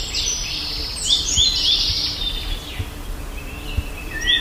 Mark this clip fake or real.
real